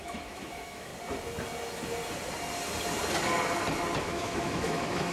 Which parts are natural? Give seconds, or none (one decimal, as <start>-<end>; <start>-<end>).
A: 0.9-4.0

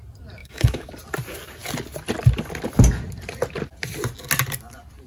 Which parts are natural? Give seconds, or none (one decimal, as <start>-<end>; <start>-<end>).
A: 0.0-0.4; 0.9-5.1

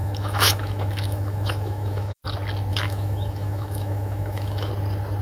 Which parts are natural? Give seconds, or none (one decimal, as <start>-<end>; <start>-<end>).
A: 2.2-2.7; 4.7-5.2

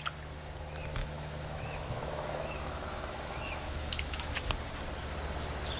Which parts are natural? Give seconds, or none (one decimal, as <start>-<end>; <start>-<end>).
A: 0.0-1.0; 4.5-5.8